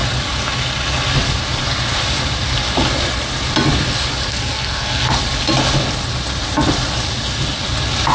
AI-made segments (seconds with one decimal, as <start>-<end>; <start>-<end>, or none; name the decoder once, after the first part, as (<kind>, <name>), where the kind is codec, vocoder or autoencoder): 4.3-5.1 (codec, SNAC)